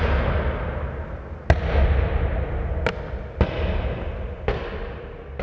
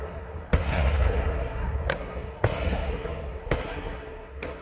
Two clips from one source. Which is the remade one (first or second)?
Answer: second